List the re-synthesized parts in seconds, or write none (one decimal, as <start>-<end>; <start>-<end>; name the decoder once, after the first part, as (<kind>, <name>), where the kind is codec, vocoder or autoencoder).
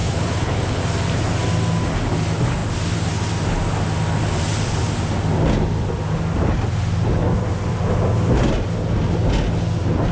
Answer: 0.0-0.8 (codec, HILCodec)